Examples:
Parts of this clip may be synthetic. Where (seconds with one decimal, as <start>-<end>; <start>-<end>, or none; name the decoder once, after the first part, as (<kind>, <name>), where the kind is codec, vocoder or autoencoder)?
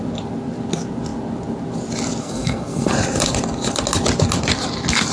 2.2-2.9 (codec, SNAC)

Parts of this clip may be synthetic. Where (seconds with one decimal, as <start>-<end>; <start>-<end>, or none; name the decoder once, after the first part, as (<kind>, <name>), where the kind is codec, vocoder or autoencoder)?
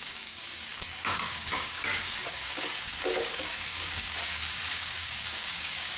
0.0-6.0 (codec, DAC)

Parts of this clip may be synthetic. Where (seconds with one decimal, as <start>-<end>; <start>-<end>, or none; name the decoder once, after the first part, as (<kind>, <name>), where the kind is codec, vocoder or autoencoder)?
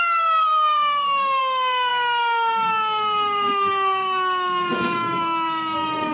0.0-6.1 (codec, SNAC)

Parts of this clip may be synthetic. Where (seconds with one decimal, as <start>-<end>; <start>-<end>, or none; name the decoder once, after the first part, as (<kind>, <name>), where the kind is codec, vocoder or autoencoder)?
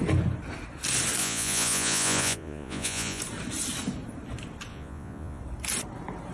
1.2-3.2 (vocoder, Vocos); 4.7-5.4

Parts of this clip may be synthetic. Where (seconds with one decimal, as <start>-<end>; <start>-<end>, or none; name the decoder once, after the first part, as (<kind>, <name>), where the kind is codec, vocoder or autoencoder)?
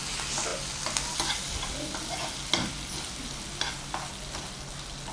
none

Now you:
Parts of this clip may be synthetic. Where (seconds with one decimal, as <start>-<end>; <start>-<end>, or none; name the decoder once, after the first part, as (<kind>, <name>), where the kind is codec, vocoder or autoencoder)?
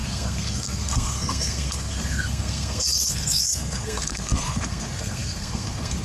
0.0-6.0 (codec, SNAC)